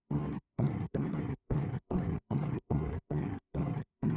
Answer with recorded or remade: remade